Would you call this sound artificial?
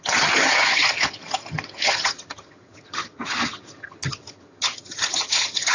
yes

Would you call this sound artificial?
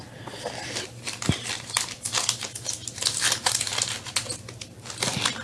no